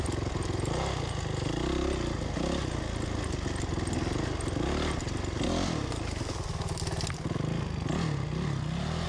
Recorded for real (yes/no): yes